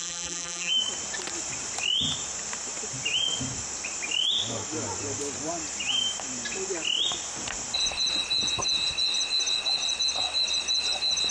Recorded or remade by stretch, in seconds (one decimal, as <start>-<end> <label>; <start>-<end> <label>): 0.0-0.7 remade; 0.7-11.3 recorded